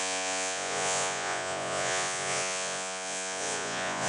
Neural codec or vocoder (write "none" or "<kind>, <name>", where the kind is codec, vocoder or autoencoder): vocoder, Vocos